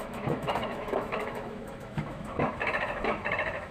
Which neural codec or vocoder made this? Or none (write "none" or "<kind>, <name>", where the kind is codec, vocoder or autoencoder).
autoencoder, DAC-VAE